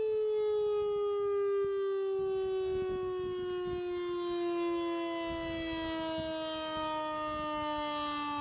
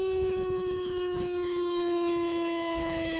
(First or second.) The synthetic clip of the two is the second